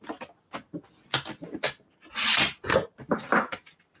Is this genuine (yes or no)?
yes